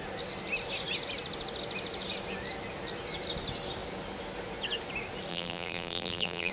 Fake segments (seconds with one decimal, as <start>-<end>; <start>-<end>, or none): 5.3-6.5